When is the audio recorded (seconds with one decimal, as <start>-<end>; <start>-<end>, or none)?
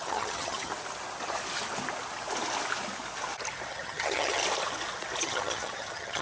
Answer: 0.7-3.7; 4.4-5.2